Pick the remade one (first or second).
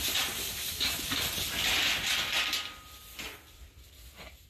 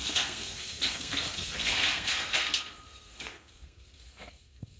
second